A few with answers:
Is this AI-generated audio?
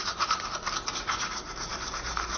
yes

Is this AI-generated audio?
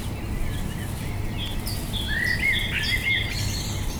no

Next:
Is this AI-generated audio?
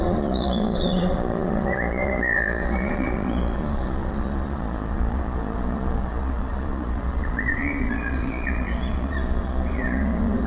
yes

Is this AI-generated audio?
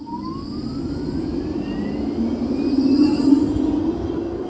no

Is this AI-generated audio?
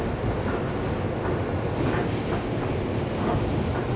no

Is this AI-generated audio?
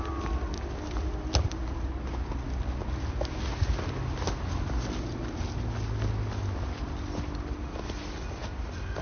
no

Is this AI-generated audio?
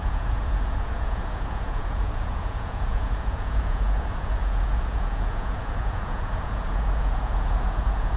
yes